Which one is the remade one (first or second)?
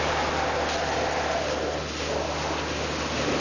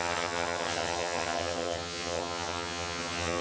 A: second